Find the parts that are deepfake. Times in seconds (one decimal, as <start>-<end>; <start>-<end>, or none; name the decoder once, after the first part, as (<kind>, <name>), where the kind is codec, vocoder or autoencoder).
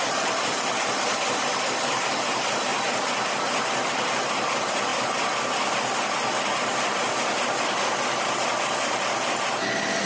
none